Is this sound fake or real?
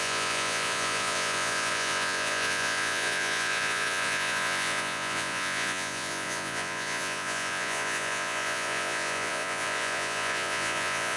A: fake